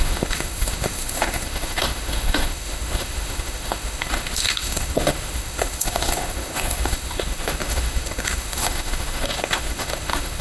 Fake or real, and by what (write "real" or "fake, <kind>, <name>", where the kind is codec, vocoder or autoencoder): fake, autoencoder, DAC-VAE